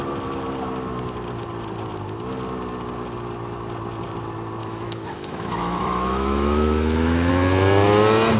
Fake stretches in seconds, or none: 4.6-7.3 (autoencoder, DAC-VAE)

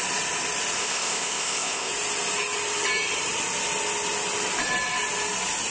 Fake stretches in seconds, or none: 0.8-1.9 (codec, ZipCodec)